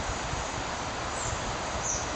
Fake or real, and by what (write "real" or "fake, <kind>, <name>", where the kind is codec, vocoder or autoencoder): fake, vocoder, BigVGAN v2